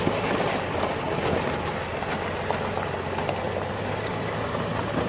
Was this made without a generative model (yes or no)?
yes